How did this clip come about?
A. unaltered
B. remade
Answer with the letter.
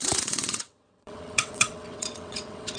B